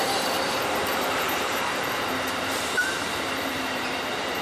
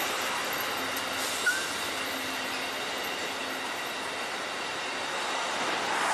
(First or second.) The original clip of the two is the second